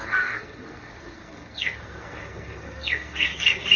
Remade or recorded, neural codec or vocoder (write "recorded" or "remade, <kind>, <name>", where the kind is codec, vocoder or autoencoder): remade, codec, SNAC